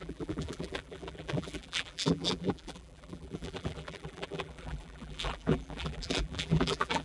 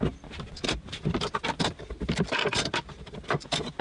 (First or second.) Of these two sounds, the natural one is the second